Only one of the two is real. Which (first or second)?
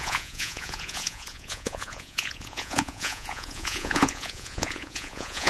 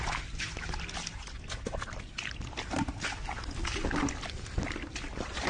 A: second